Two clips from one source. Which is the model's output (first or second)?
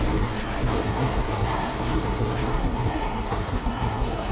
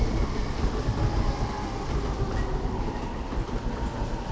first